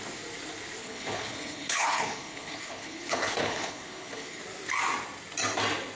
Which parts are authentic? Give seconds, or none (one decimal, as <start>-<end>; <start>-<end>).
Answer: 0.0-0.8; 4.4-6.0